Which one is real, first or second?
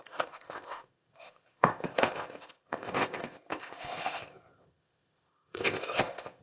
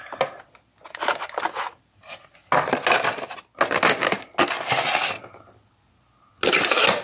second